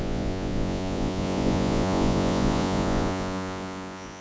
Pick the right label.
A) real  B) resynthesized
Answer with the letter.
B